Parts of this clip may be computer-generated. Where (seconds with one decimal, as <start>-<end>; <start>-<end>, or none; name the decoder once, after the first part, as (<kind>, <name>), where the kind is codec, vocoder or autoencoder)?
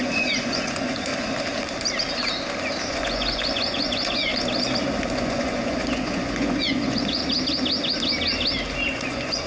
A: 0.0-1.1 (vocoder, Vocos); 2.9-4.3; 5.1-7.2; 8.9-9.5